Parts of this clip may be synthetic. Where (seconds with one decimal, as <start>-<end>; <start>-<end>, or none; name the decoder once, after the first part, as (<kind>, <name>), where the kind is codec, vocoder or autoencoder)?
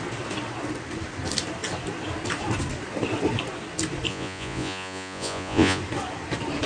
4.1-5.8 (vocoder, Vocos)